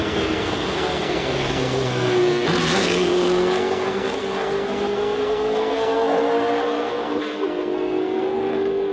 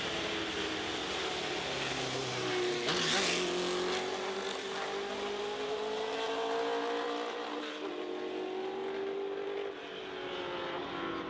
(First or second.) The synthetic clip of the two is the first